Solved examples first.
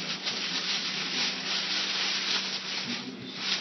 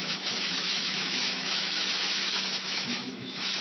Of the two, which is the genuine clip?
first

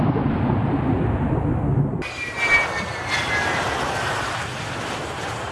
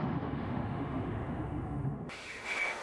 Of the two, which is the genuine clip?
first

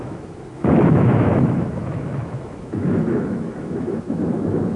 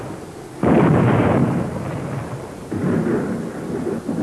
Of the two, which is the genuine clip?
second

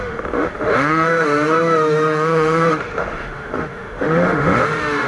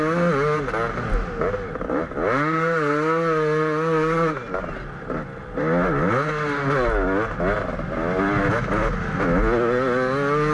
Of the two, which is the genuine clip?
second